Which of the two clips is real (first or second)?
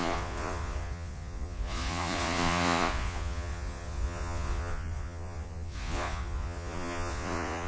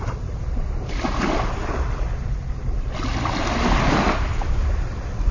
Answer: second